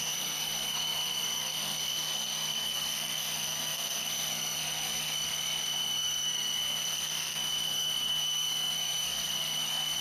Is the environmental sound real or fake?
fake